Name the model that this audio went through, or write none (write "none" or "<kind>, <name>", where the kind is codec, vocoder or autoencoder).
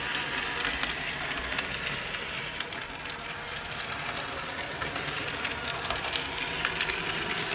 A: none